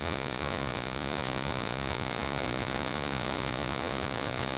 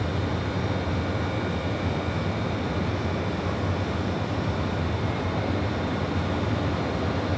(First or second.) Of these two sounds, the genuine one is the second